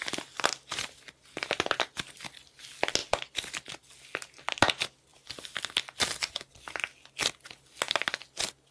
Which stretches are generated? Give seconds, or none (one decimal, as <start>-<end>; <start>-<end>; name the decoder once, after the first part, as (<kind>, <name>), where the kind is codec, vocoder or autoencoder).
none